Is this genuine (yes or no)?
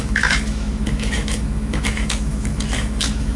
no